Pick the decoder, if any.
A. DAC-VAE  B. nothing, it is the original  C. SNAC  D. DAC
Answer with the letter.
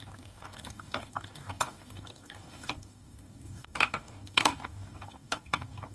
D